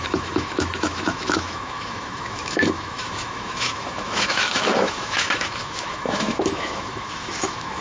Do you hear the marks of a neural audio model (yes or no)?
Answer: yes